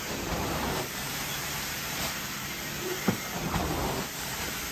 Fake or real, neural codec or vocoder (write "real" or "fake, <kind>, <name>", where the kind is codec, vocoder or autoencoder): fake, vocoder, BigVGAN v2